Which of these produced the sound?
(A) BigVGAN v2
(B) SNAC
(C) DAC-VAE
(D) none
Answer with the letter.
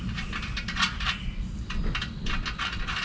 D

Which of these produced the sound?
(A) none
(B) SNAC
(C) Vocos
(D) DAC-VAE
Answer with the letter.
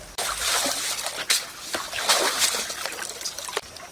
A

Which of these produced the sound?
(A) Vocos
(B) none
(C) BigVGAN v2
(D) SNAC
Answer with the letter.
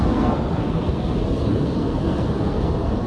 D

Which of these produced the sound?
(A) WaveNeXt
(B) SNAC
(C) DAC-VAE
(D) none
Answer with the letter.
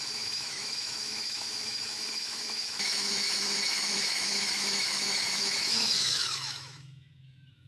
C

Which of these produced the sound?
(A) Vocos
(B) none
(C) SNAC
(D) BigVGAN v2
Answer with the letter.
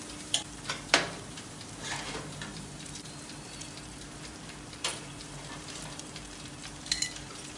D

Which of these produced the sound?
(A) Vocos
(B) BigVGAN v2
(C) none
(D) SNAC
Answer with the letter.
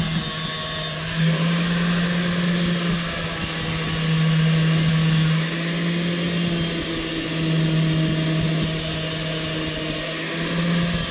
C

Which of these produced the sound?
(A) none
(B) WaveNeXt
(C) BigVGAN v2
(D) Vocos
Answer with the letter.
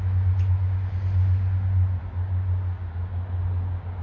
A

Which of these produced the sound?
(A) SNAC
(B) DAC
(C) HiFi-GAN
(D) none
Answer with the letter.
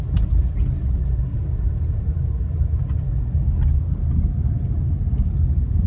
D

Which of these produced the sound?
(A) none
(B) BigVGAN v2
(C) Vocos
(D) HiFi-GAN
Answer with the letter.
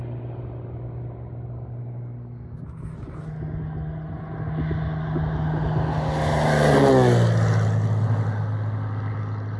A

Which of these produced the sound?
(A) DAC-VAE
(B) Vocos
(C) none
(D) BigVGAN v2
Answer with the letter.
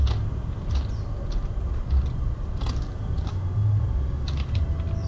C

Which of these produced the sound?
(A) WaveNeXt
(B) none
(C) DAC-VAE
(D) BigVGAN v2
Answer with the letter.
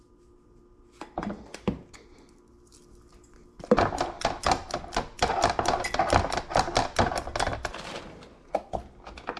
B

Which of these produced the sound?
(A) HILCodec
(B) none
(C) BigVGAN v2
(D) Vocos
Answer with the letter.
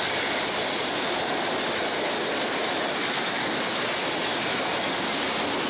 B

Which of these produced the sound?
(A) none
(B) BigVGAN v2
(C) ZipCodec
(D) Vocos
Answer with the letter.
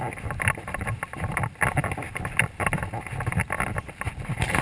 A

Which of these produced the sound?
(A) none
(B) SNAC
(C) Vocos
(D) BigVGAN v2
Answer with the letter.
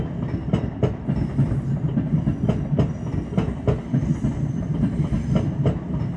A